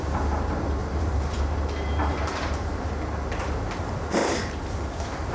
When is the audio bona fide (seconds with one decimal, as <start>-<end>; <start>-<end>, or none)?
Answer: 0.0-0.8; 1.4-2.0; 2.9-4.2

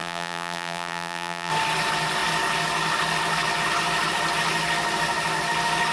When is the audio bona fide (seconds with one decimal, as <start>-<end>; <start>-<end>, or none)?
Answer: 1.5-5.9

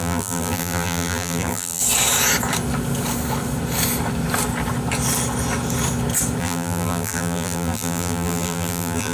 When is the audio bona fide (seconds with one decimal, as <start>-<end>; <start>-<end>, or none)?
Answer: 1.8-6.4

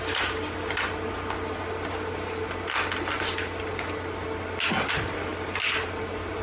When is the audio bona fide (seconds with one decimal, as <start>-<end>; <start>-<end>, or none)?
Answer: 0.0-5.3